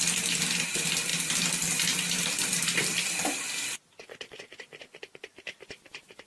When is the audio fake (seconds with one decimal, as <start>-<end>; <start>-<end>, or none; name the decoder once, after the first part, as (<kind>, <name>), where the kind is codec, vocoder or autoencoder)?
none